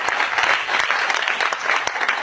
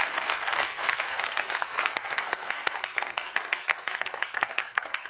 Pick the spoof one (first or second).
second